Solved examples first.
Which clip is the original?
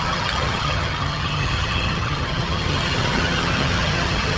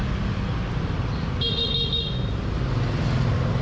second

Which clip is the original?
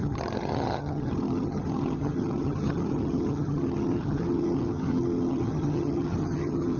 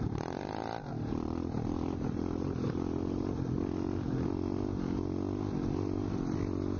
second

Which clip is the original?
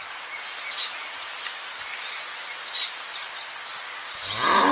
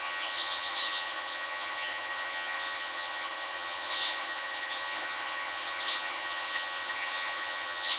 first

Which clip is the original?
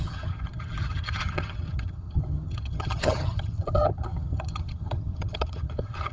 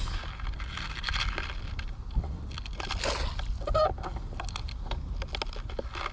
second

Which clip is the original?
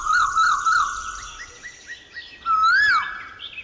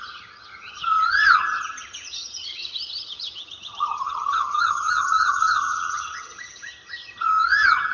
first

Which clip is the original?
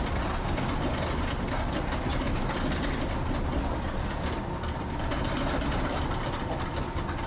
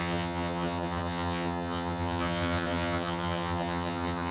first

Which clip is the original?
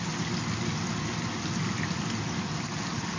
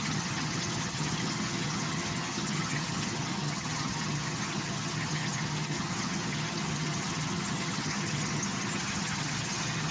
first